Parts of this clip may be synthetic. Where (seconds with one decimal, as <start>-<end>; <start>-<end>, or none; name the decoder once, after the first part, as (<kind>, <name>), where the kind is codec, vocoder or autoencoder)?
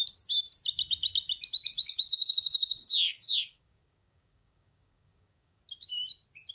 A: 1.7-5.6 (codec, DAC)